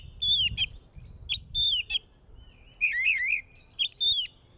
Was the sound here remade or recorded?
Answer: recorded